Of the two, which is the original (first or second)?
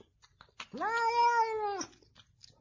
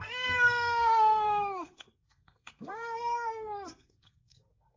first